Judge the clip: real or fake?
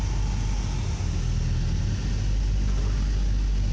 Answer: real